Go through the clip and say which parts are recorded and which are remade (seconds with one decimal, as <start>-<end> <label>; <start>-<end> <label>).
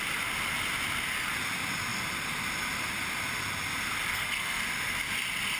0.0-4.1 recorded; 4.1-4.6 remade; 4.6-5.6 recorded